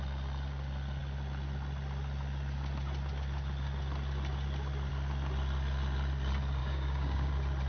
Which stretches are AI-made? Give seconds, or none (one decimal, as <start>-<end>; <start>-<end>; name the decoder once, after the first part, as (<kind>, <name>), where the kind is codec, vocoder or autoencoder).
6.6-7.3 (codec, DAC)